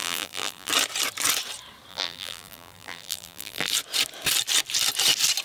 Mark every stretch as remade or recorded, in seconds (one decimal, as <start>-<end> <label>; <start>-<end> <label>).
0.0-0.7 remade; 0.7-1.9 recorded; 1.9-3.7 remade; 3.7-5.4 recorded